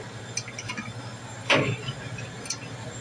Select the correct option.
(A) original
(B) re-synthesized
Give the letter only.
A